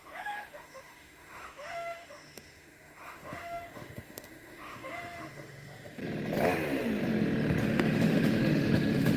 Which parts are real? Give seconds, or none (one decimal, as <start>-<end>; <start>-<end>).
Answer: 6.0-7.6